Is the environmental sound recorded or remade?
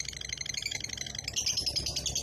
recorded